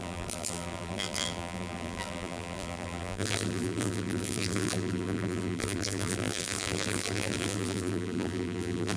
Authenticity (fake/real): fake